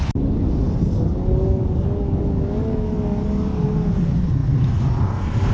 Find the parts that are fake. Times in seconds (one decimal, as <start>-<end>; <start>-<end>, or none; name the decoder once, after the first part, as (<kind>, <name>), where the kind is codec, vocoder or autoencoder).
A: 1.2-3.7 (codec, DAC)